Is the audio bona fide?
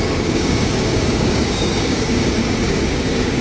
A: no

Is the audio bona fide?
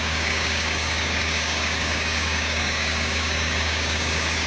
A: no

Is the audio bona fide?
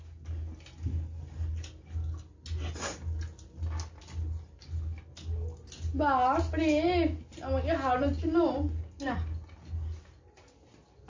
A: yes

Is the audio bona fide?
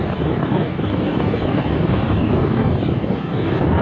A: no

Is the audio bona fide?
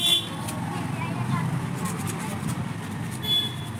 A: yes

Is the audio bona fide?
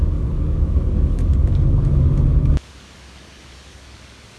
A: no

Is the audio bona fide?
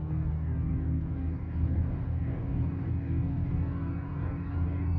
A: no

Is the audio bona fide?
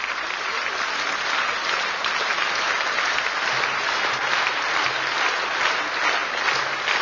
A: yes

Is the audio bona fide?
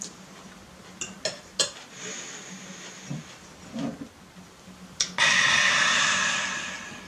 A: yes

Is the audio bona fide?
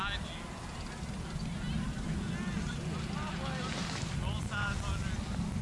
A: yes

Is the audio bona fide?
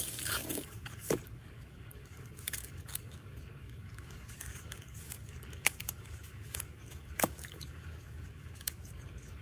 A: no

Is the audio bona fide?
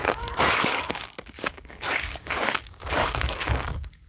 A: no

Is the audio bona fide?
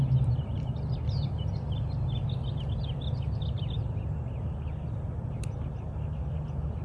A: yes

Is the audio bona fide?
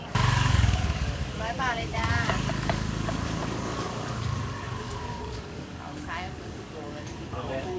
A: no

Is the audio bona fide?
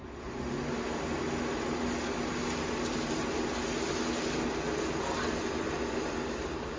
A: yes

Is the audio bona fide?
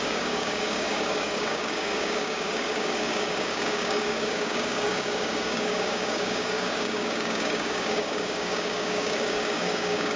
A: no